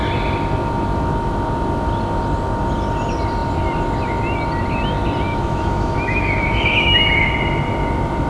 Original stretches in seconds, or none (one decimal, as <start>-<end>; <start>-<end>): 0.0-5.3; 7.3-8.3